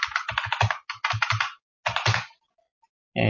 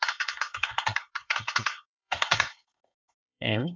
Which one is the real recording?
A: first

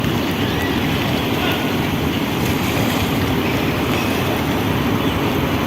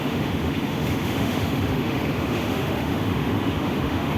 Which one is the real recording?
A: first